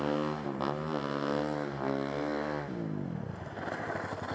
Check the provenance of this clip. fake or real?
real